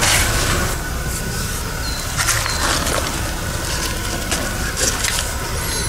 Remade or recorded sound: recorded